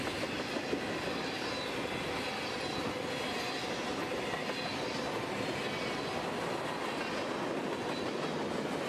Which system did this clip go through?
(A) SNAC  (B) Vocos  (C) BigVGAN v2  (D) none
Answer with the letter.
D